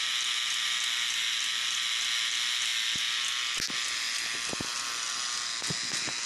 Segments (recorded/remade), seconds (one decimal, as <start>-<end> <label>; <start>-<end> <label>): 0.0-6.3 recorded